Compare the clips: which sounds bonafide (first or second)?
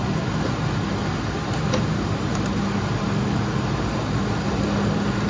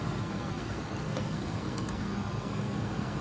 first